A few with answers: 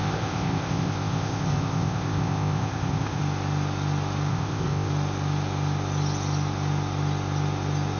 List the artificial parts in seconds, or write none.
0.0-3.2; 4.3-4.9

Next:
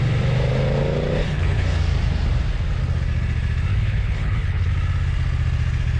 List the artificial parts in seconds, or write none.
1.2-1.8; 3.7-4.7

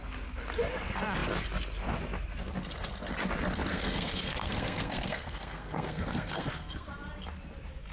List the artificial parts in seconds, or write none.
3.7-6.9

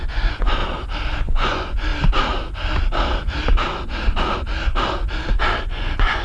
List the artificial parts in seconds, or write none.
0.0-0.6; 1.2-1.9; 5.6-6.2

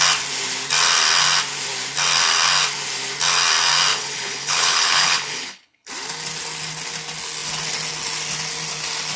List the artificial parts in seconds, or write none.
3.9-5.9

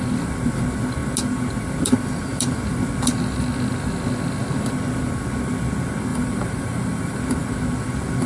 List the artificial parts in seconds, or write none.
6.1-7.2

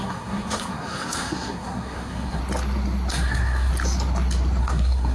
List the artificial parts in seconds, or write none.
0.0-2.4; 3.1-3.7; 4.6-5.1

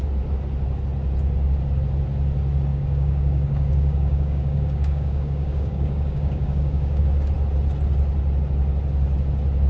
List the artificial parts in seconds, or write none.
2.7-7.0